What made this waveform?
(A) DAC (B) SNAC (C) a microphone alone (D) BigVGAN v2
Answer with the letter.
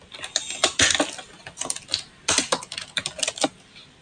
C